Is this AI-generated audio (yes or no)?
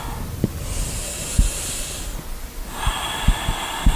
no